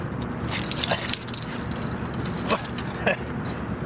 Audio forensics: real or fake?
real